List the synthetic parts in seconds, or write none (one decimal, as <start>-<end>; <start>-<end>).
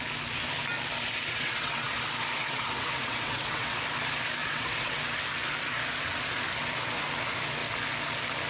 1.3-2.0; 2.4-3.8; 4.4-5.0